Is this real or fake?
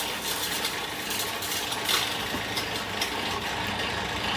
real